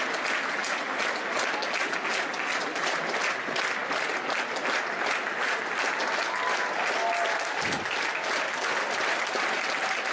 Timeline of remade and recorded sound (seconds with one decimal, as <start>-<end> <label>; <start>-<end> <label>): 0.0-10.1 recorded